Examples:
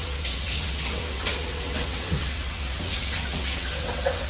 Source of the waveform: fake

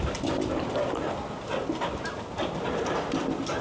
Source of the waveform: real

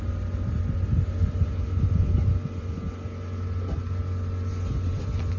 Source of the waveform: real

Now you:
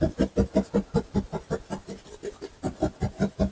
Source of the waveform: real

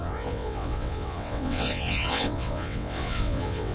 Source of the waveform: fake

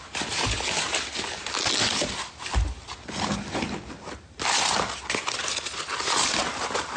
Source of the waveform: real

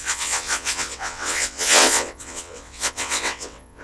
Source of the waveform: fake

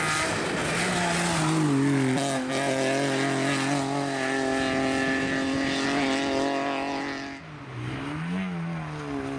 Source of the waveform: real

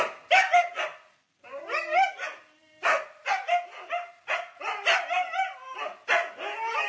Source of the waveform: real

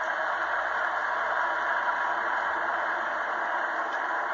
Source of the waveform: real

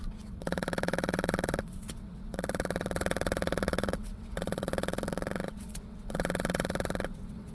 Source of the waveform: fake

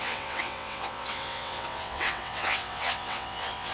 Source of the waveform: fake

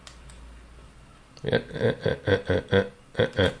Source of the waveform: real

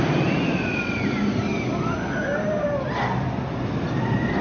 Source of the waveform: real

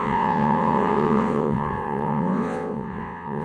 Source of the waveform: fake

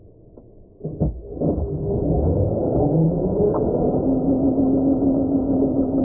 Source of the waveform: real